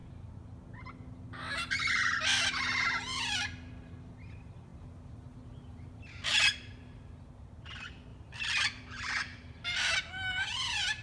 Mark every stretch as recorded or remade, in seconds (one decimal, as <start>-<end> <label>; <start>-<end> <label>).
0.0-8.1 recorded; 8.1-10.1 remade; 10.1-11.0 recorded